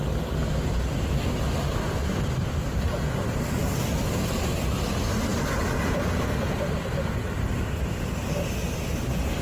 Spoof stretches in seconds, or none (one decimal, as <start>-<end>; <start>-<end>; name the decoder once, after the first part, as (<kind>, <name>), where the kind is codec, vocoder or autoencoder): none